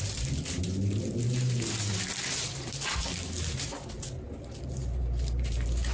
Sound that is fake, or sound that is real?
real